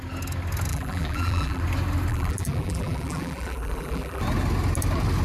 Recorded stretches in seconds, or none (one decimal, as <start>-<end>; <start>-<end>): 0.0-0.7; 1.6-2.1; 4.2-5.2